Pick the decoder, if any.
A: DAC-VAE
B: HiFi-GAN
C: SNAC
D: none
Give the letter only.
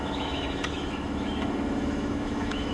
A